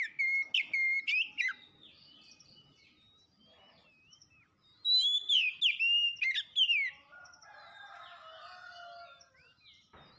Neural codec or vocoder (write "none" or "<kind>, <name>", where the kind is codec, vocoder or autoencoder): none